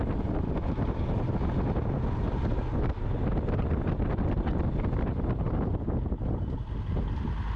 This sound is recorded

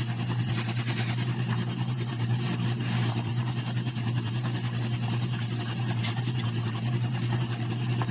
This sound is remade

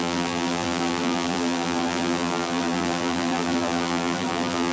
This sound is remade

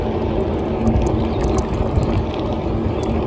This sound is recorded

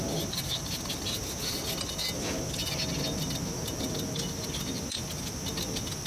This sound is recorded